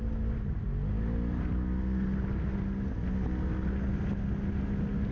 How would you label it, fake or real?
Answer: real